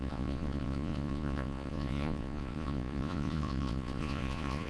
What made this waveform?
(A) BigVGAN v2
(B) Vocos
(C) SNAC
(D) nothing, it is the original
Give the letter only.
B